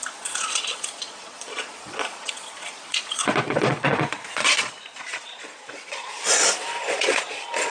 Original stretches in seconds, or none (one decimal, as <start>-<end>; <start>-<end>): 6.1-6.8